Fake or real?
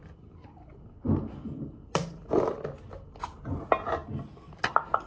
real